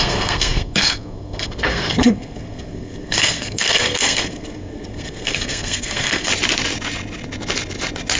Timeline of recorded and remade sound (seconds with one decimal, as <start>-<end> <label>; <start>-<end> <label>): 0.0-6.3 remade; 6.3-8.2 recorded